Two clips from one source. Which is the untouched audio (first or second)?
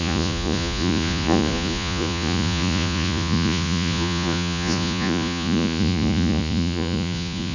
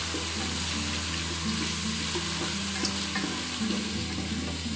second